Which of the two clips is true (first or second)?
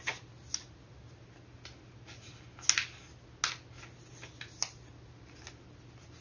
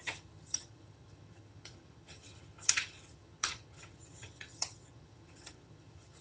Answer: first